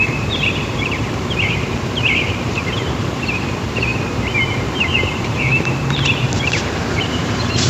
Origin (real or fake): fake